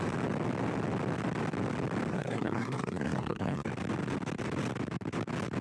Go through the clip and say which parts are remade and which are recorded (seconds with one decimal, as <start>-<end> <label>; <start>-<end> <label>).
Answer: 0.0-2.1 recorded; 2.1-3.7 remade; 3.7-5.6 recorded